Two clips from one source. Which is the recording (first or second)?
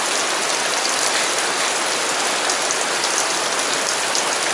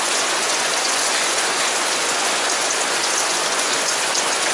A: first